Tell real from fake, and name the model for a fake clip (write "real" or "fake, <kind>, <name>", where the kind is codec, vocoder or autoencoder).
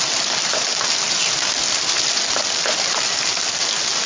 real